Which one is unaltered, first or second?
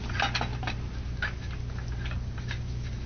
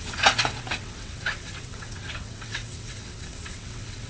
first